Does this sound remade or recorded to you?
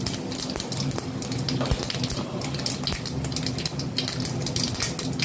recorded